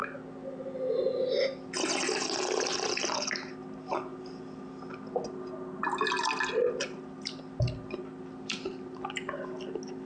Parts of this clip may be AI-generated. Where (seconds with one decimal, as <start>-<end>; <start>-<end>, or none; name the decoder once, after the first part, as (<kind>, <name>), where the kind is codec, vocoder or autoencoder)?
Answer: none